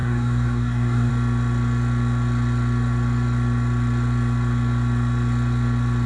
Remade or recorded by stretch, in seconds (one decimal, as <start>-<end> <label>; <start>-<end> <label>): 0.0-1.1 remade; 1.1-6.1 recorded